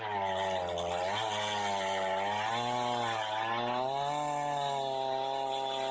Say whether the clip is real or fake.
real